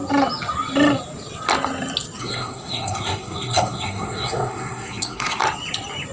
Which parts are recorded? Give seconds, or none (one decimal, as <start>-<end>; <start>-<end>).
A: 0.0-2.2; 5.4-6.1